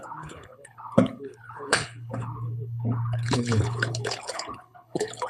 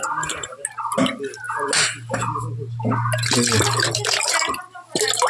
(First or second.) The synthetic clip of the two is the first